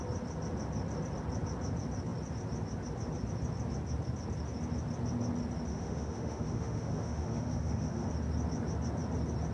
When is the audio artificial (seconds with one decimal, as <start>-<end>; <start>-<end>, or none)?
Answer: 5.7-8.1